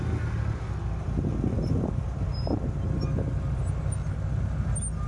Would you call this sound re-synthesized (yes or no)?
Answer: no